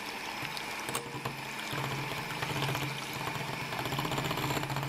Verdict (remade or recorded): recorded